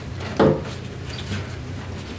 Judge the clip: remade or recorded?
recorded